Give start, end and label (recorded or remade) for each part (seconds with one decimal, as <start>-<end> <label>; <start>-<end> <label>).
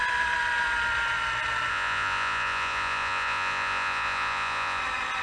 0.0-1.7 recorded; 1.7-4.8 remade; 4.8-5.2 recorded